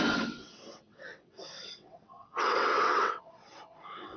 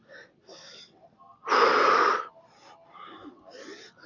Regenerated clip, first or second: first